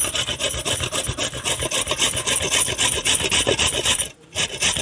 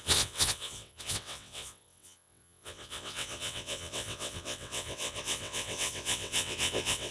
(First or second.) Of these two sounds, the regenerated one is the second